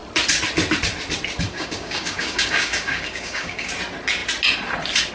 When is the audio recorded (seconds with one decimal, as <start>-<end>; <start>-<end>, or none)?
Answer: 0.0-1.5; 3.7-5.1